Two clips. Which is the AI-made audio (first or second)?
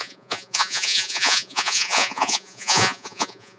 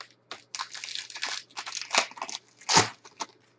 first